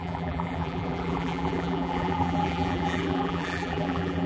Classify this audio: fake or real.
fake